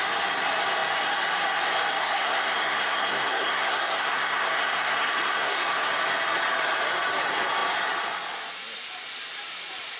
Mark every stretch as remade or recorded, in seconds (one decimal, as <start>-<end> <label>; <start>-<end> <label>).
0.0-2.0 recorded; 2.0-5.9 remade; 5.9-10.0 recorded